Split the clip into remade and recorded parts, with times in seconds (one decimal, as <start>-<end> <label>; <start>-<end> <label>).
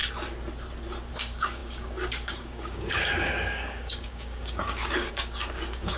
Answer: 0.0-1.1 recorded; 1.1-6.0 remade